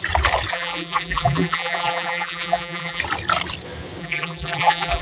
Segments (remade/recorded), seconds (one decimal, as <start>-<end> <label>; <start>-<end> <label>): 0.0-0.5 recorded; 0.5-3.0 remade; 3.0-4.0 recorded; 4.0-5.0 remade